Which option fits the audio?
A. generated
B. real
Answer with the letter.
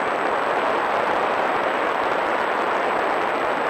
B